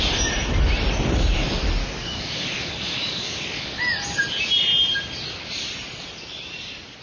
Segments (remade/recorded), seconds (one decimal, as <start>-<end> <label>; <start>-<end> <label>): 0.0-1.8 recorded; 1.8-3.8 remade; 3.8-7.0 recorded